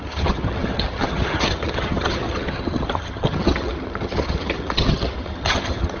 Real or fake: fake